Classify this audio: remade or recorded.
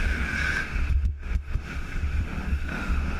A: remade